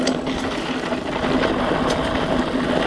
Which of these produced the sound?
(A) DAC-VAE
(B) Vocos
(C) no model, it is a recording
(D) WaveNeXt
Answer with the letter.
C